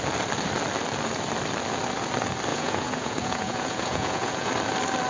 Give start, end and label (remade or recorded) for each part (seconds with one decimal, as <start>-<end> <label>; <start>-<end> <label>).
0.0-2.5 recorded; 2.5-4.5 remade; 4.5-5.1 recorded